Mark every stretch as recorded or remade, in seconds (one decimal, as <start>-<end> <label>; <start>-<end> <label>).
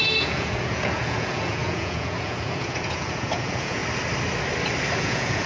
0.0-3.8 remade; 3.8-5.0 recorded; 5.0-5.5 remade